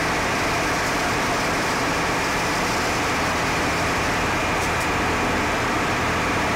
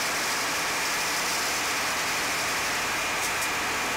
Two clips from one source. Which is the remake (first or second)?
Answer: first